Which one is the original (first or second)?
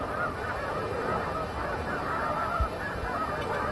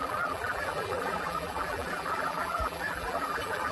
first